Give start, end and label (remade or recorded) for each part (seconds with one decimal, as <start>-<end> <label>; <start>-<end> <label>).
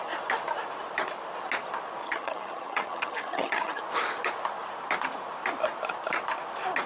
0.0-2.0 recorded; 2.0-3.8 remade; 3.8-6.9 recorded